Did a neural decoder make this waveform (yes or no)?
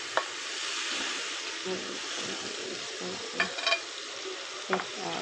no